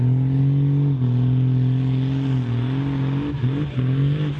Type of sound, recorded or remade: recorded